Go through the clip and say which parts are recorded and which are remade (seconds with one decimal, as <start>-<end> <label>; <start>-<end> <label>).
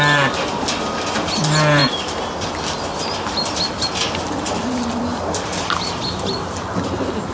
0.0-7.3 recorded